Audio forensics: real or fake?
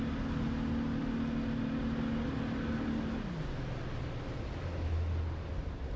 real